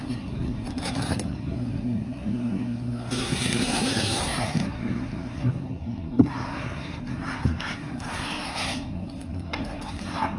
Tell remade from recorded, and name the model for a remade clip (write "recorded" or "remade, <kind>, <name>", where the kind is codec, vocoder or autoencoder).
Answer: remade, codec, SNAC